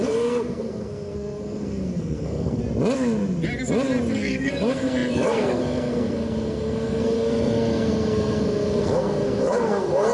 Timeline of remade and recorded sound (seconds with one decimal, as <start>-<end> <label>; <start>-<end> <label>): 0.0-2.6 remade; 2.6-4.1 recorded; 4.1-10.1 remade